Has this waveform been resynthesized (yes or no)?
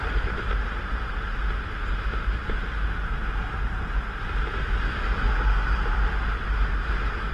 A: no